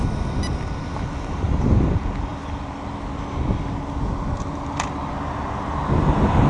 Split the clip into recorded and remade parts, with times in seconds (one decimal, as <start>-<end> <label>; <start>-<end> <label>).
0.0-6.5 recorded